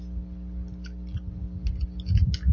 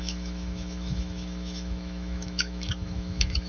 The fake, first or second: second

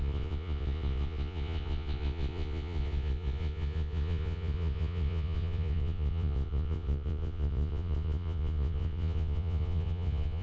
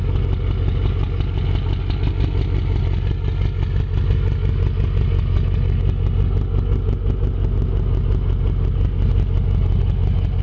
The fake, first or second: first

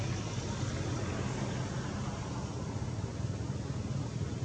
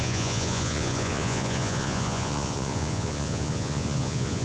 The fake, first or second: second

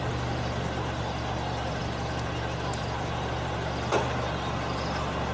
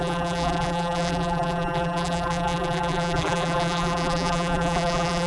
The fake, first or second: second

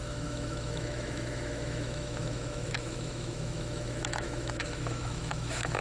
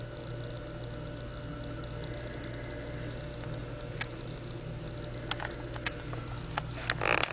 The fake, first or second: first